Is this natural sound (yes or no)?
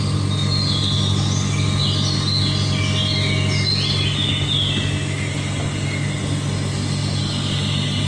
yes